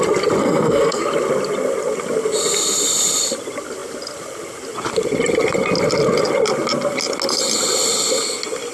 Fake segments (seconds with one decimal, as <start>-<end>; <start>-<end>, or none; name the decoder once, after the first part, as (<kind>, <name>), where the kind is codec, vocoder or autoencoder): 0.4-1.0 (codec, SNAC)